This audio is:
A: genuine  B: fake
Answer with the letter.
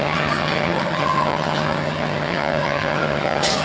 B